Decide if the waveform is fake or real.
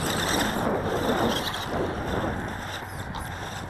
real